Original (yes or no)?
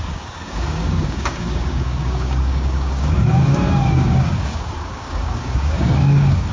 no